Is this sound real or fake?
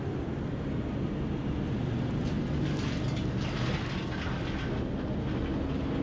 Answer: real